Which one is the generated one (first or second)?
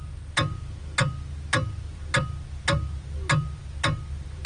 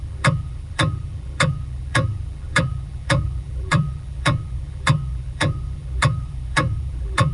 second